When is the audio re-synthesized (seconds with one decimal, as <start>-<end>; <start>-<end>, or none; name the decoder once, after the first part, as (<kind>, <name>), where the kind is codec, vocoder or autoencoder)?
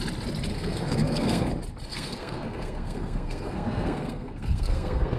0.5-1.5 (codec, SNAC); 1.9-5.2